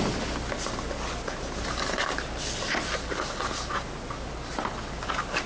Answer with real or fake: real